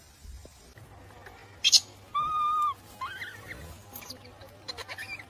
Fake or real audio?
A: real